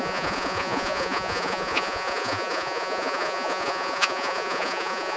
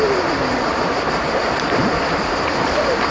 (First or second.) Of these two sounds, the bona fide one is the second